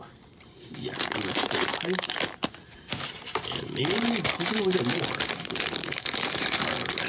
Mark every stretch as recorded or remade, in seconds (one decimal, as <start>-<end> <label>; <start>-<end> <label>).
0.0-7.1 remade